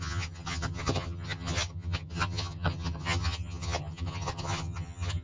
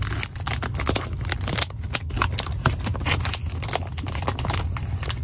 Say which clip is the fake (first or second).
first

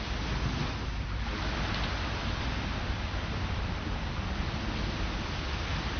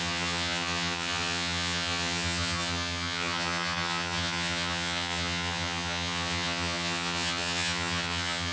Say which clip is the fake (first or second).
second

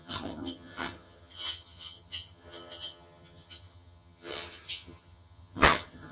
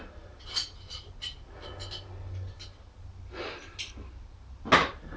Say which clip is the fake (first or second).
first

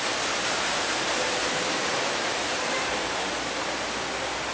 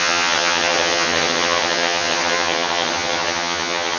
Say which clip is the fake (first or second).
second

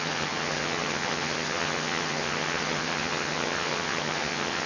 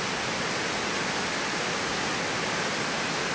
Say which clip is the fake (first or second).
first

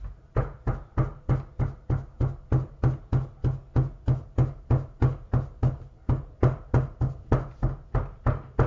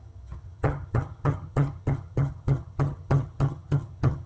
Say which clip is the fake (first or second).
second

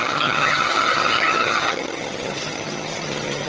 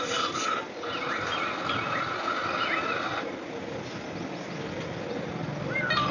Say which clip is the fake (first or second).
first